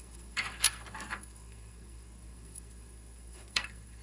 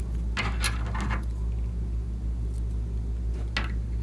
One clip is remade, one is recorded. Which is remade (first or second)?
first